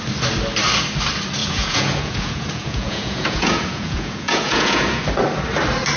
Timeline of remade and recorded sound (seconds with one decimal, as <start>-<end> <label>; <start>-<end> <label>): 0.0-1.4 recorded; 1.4-5.0 remade; 5.0-6.0 recorded